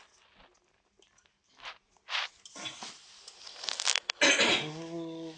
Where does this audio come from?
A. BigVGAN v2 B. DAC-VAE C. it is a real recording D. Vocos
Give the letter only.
C